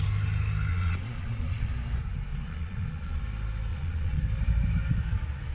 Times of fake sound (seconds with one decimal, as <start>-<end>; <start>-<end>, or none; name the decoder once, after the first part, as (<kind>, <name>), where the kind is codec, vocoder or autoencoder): 0.7-1.7 (vocoder, Vocos); 2.3-3.2; 3.7-4.2